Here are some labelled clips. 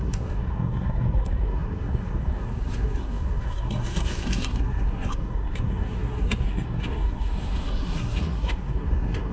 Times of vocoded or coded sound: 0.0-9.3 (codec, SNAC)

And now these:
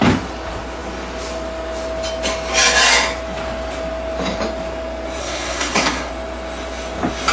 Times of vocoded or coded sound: 5.2-6.1 (codec, SNAC)

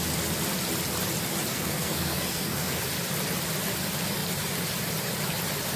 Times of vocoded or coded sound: 1.5-2.8 (codec, SNAC)